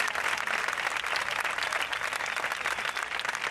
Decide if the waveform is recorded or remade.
recorded